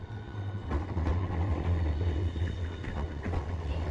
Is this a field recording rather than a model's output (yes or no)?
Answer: no